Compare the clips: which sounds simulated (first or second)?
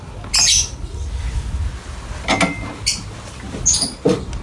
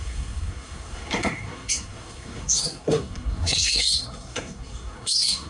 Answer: second